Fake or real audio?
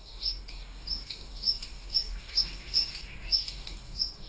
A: fake